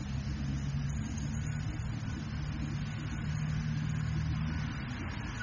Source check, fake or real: real